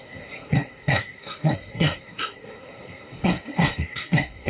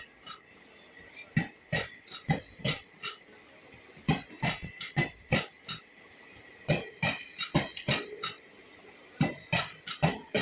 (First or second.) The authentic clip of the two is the second